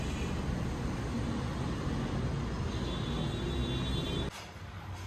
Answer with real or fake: real